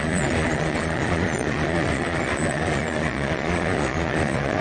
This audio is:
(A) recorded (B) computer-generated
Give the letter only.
B